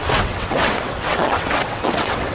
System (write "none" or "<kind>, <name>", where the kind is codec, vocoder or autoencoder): vocoder, WaveNeXt